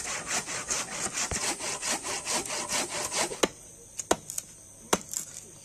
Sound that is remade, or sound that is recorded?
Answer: recorded